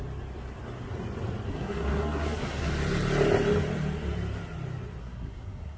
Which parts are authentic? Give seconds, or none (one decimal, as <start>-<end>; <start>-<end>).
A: 0.0-1.5; 2.7-5.0